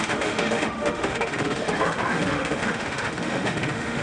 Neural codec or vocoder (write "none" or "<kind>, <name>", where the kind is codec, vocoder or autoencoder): autoencoder, DAC-VAE